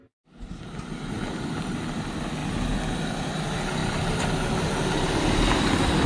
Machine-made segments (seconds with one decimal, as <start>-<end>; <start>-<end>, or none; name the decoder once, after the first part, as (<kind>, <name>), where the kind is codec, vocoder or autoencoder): 3.8-5.4 (vocoder, BigVGAN v2)